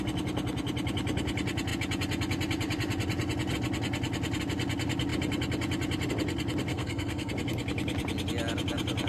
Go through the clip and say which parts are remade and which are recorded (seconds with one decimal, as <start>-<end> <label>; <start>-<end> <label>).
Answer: 0.0-6.7 recorded; 6.7-7.3 remade; 7.3-9.1 recorded